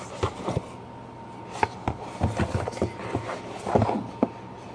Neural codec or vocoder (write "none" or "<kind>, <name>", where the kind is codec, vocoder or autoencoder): none